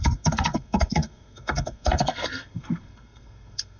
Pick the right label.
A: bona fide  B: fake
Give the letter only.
B